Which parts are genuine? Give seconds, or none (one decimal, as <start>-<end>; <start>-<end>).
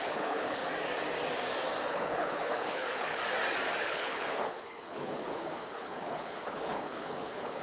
0.6-1.9; 3.2-3.8